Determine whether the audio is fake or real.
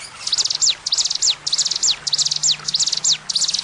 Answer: real